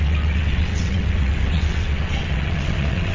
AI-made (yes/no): yes